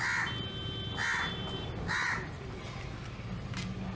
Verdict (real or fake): real